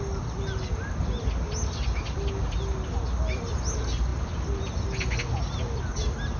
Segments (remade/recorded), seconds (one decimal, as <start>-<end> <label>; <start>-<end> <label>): 0.0-6.4 recorded